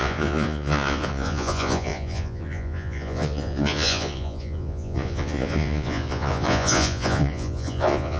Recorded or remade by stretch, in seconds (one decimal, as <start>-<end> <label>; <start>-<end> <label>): 0.0-8.2 remade